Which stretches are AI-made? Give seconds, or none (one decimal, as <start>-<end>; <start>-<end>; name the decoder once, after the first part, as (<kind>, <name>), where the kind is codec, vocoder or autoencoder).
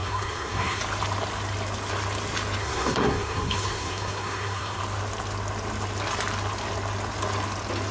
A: 0.0-0.8 (codec, SNAC); 2.6-4.8